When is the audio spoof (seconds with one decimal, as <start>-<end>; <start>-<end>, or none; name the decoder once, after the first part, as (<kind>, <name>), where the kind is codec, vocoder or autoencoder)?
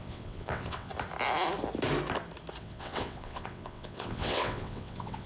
0.0-0.9 (vocoder, WaveNeXt); 2.6-5.3